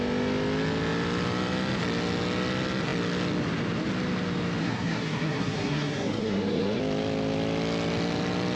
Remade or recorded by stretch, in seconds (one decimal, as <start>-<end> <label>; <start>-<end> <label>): 0.0-4.6 recorded; 4.6-6.8 remade; 6.8-8.6 recorded